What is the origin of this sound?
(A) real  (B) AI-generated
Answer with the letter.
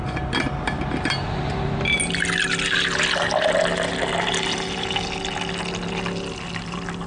A